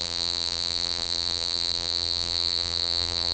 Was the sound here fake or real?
fake